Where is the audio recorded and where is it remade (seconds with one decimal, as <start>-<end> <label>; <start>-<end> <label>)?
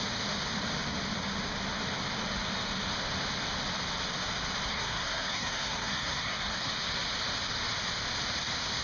0.0-4.7 recorded; 4.7-6.7 remade; 6.7-8.8 recorded